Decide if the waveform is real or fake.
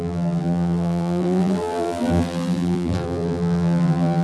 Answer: fake